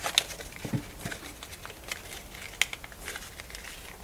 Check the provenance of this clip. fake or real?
real